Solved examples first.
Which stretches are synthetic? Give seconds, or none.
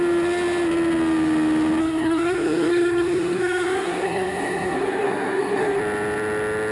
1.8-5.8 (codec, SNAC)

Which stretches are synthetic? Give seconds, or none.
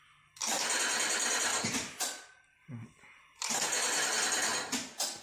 1.5-2.3 (vocoder, BigVGAN v2)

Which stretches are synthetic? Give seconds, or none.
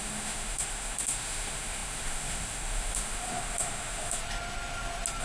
0.0-4.2 (autoencoder, DAC-VAE)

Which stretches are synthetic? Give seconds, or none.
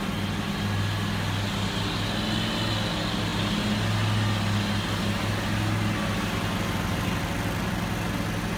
none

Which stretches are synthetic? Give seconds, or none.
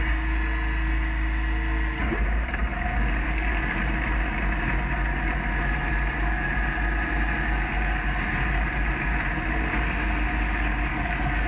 2.6-3.8 (codec, DAC); 10.9-11.5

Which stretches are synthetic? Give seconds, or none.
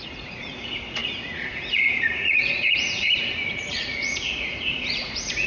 0.0-5.5 (vocoder, Vocos)